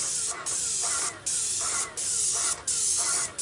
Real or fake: real